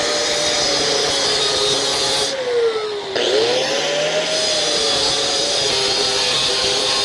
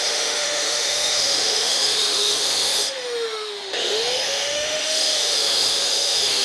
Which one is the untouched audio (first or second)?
first